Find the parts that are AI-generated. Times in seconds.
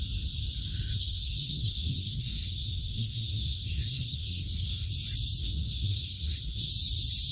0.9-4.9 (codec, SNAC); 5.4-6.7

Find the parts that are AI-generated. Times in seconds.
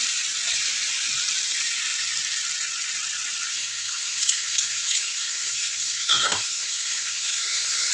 3.5-7.9 (codec, SNAC)